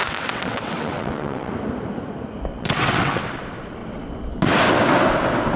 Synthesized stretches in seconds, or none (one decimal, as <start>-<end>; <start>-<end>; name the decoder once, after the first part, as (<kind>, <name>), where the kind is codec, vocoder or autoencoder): 0.0-1.5 (vocoder, WaveNeXt); 2.5-3.2